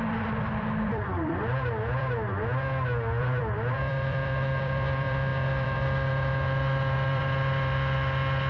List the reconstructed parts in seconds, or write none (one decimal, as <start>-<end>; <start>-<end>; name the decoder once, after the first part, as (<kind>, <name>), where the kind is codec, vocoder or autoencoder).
0.0-1.3 (vocoder, BigVGAN v2); 3.2-8.5